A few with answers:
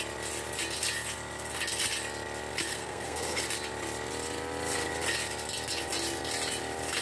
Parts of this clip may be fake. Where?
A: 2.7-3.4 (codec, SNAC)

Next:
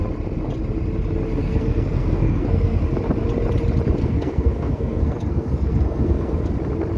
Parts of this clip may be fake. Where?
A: 1.4-2.8 (codec, SNAC); 4.0-6.5

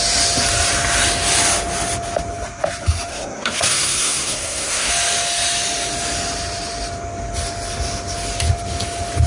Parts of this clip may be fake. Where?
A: 3.1-4.9 (codec, SNAC)

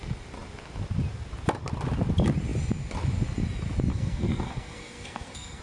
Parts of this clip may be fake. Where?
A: 3.9-5.6 (codec, SNAC)

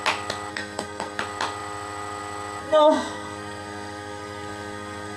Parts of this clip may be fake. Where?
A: 0.5-1.2 (codec, SNAC); 2.6-5.2